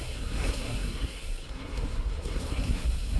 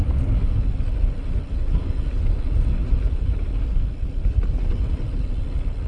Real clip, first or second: second